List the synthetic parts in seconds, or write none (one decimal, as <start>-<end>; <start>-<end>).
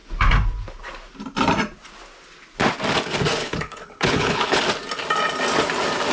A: 3.4-4.6